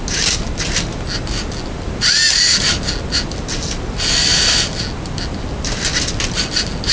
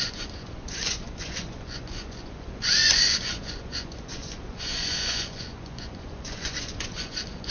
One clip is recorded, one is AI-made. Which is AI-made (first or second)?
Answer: second